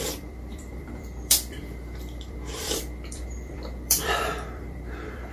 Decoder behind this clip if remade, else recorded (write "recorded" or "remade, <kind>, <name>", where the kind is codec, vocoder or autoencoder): remade, vocoder, BigVGAN v2